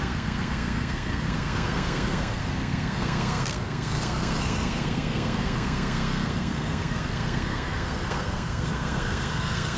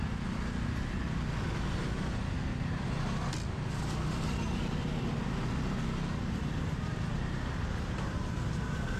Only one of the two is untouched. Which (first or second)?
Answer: second